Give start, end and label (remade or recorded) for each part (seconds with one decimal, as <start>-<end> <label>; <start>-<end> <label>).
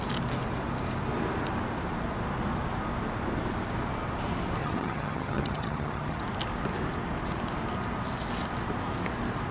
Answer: 0.0-4.6 recorded; 4.6-6.2 remade; 6.2-9.5 recorded